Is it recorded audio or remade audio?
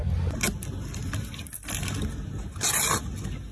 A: recorded